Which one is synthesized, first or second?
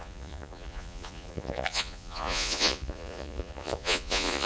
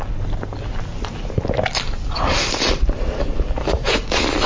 first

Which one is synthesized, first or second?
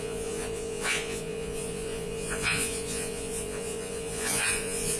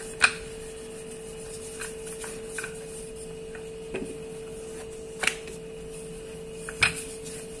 first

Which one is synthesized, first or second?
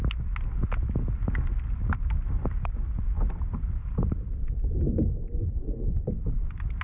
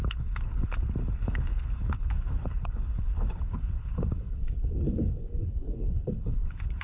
second